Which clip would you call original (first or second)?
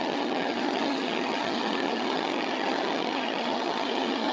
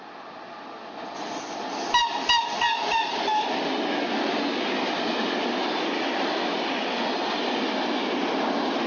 second